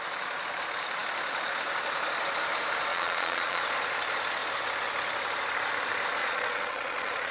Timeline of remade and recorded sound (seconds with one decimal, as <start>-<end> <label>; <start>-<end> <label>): 0.0-2.9 recorded; 2.9-3.6 remade; 3.6-6.2 recorded; 6.2-7.3 remade